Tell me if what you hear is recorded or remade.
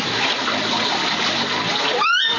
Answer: recorded